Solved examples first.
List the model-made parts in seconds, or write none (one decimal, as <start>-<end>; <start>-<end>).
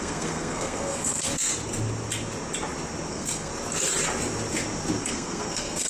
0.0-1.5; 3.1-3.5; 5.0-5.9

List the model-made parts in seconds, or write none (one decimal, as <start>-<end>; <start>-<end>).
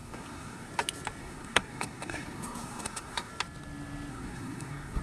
0.0-0.7; 1.2-3.3; 4.1-5.0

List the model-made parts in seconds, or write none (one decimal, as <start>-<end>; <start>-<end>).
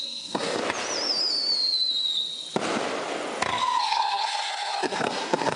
0.0-0.6; 3.8-5.6